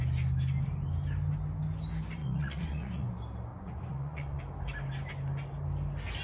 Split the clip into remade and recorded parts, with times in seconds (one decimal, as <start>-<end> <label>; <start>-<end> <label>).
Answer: 0.0-2.2 recorded; 2.2-3.1 remade; 3.1-3.5 recorded; 3.5-4.4 remade; 4.4-6.2 recorded